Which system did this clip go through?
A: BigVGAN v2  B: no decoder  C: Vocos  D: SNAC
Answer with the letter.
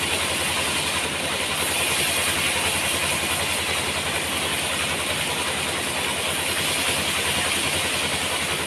B